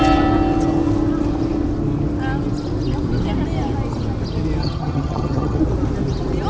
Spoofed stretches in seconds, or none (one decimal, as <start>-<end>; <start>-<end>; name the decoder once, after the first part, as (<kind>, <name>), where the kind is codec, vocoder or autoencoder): 4.6-5.6 (vocoder, HiFi-GAN)